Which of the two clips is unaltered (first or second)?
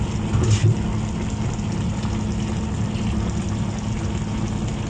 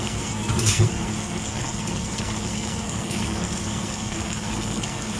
first